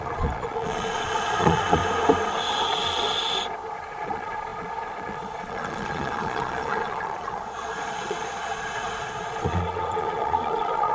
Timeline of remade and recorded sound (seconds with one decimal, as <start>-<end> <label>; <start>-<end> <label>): 0.0-1.8 remade; 1.8-3.7 recorded; 3.7-10.9 remade

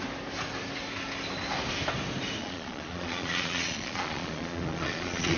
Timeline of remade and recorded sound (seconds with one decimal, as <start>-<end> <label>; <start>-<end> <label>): 0.0-2.4 recorded; 2.4-5.4 remade

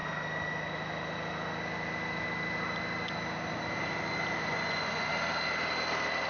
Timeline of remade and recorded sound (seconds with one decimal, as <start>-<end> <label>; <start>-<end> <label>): 0.0-4.5 recorded; 4.5-5.1 remade; 5.1-6.3 recorded

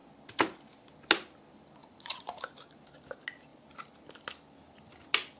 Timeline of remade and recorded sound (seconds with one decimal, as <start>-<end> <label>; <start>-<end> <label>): 0.0-1.8 recorded; 1.8-2.4 remade; 2.4-5.4 recorded

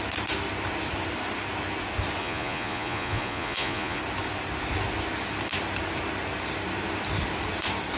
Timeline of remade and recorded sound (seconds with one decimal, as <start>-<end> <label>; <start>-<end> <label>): 0.0-2.2 recorded; 2.2-4.0 remade; 4.0-8.0 recorded

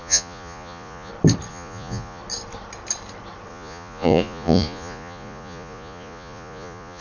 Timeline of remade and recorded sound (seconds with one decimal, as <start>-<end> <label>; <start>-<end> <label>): 0.0-1.1 remade; 1.1-1.5 recorded; 1.5-2.2 remade; 2.2-3.5 recorded; 3.5-7.0 remade

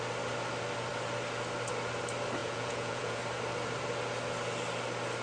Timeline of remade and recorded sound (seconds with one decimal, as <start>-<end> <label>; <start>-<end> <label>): 0.0-2.4 recorded; 2.4-3.2 remade; 3.2-5.2 recorded